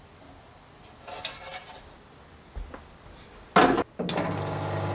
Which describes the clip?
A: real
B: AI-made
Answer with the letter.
A